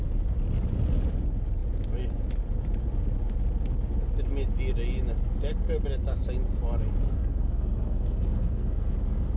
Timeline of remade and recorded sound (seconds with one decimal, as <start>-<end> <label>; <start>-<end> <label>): 0.0-7.1 recorded; 7.1-8.9 remade; 8.9-9.4 recorded